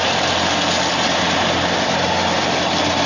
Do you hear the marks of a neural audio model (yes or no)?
no